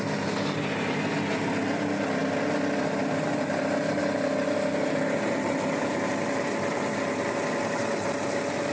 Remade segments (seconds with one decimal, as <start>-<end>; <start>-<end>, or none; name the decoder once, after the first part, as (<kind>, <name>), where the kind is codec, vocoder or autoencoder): none